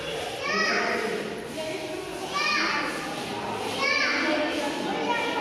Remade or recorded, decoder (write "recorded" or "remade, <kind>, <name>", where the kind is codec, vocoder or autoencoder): recorded